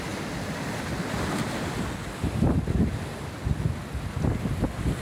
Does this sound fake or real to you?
real